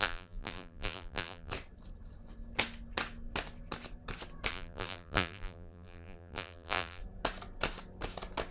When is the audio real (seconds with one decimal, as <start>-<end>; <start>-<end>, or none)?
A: 1.5-4.5; 7.0-8.5